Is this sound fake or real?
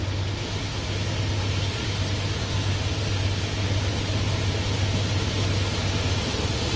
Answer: real